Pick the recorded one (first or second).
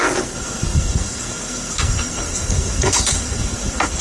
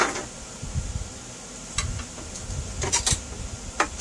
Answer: second